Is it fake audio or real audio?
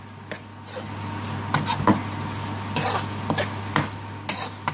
real